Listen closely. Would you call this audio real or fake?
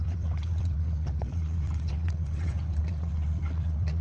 fake